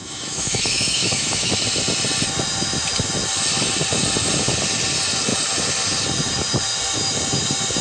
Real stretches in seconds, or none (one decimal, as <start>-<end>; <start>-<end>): 1.5-7.8